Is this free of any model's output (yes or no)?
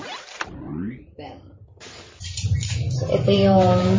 no